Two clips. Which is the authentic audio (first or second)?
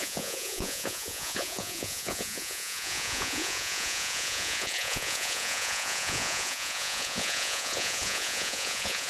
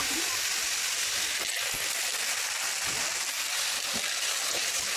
second